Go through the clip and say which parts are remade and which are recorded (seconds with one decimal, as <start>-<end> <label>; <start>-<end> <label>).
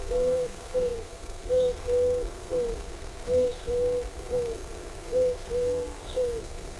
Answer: 0.0-6.8 remade